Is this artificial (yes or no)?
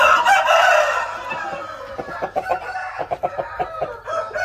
no